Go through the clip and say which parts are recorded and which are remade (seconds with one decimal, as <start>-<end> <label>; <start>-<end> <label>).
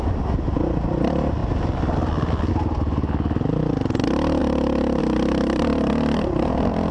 0.0-4.4 recorded; 4.4-5.0 remade; 5.0-6.9 recorded